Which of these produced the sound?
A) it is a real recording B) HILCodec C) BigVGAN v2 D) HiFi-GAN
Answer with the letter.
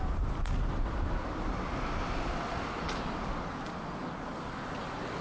A